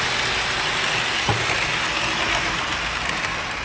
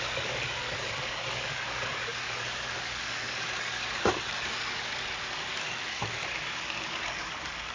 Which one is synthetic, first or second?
second